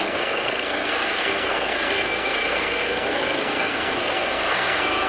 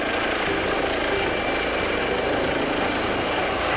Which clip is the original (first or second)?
second